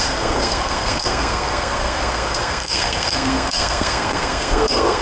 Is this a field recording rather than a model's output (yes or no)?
no